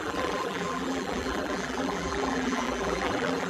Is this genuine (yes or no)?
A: no